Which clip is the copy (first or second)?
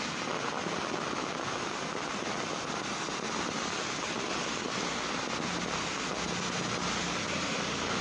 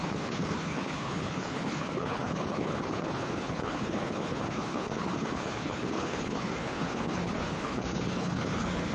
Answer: second